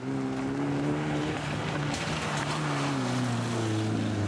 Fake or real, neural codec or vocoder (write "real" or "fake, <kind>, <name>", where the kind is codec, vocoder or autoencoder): real